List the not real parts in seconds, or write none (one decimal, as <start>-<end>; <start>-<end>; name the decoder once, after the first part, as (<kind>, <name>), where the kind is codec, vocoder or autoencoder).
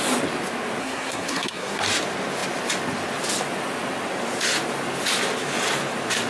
0.8-1.8 (codec, SNAC)